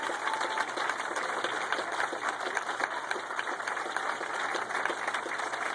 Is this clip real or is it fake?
real